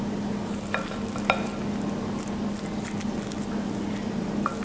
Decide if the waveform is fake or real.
real